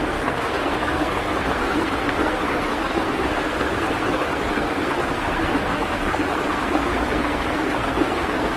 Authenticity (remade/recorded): remade